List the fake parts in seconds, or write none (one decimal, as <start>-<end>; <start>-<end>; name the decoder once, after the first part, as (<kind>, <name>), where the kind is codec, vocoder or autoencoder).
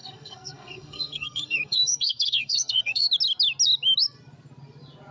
0.0-3.1 (codec, SNAC)